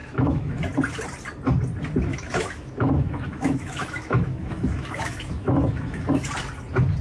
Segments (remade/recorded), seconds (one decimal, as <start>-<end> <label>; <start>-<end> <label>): 0.0-0.6 remade; 0.6-2.1 recorded; 2.1-6.3 remade; 6.3-7.0 recorded